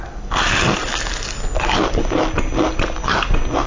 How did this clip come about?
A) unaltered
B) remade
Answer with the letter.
A